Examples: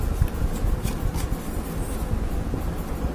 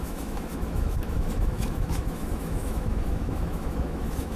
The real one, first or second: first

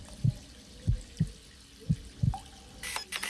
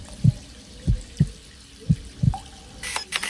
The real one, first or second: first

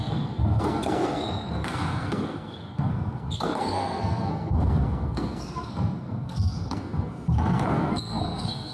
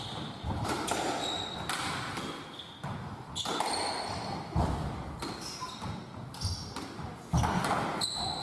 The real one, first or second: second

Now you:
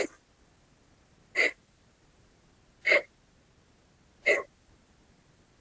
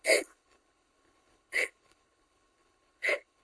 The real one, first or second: first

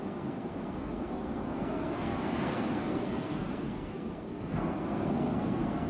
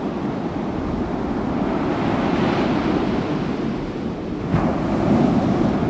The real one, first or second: second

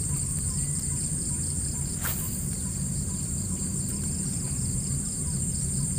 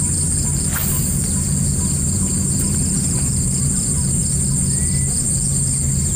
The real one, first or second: second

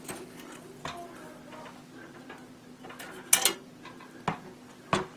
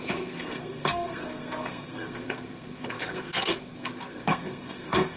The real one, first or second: first